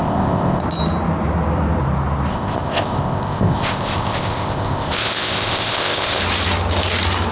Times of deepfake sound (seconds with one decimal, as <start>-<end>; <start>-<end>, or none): 0.0-0.6; 2.3-6.2